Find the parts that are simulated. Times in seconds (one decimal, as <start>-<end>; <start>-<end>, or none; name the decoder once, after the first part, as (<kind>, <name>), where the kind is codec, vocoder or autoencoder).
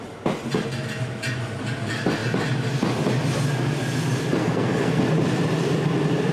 4.4-5.0 (codec, SNAC)